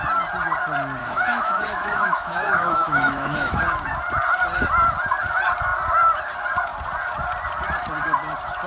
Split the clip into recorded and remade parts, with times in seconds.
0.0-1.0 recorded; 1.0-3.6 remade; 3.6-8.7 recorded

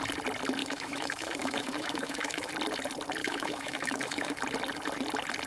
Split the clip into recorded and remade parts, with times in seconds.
0.0-0.6 recorded; 0.6-2.5 remade; 2.5-3.2 recorded; 3.2-4.4 remade; 4.4-5.5 recorded

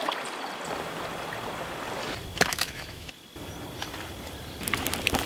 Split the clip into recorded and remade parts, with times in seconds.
0.0-2.5 recorded; 2.5-3.1 remade; 3.1-5.3 recorded

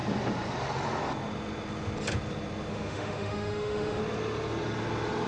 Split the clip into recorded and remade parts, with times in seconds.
0.0-2.7 recorded; 2.7-4.0 remade; 4.0-5.3 recorded

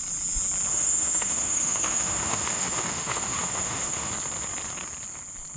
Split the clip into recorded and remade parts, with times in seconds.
0.0-0.7 recorded; 0.7-4.1 remade; 4.1-5.6 recorded

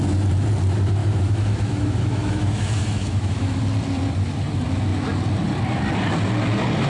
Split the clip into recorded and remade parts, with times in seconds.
0.0-1.0 recorded; 1.0-3.6 remade; 3.6-6.9 recorded